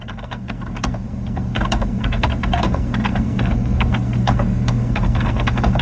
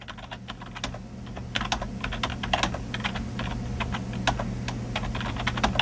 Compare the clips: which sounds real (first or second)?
second